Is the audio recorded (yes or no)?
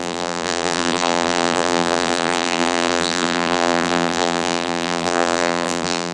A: no